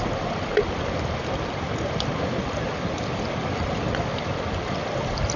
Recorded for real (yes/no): yes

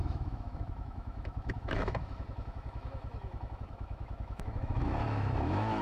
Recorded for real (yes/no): no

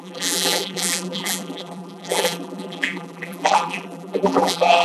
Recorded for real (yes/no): no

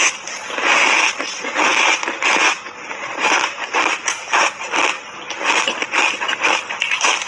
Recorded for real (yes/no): yes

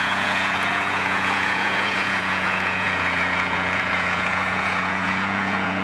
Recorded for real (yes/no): no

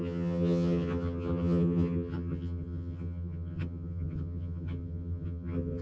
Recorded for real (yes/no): no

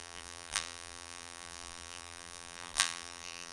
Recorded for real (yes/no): no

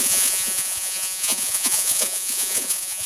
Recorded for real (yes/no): no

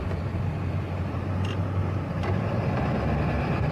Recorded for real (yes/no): yes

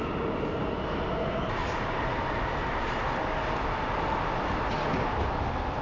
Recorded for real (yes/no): yes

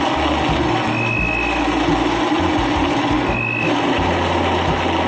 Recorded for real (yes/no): yes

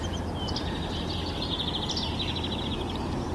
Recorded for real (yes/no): yes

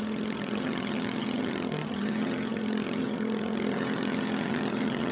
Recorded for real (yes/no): no